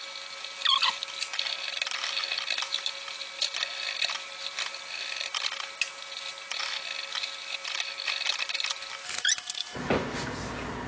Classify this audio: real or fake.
real